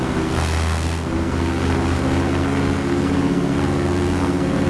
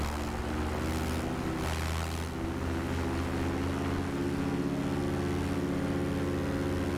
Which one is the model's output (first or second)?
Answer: first